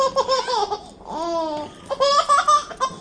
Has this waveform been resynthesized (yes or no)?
no